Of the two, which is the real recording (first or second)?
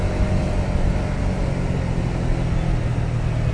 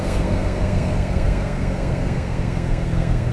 first